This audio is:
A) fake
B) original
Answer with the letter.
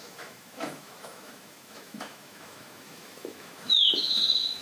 A